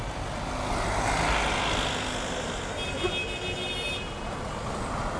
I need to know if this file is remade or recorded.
recorded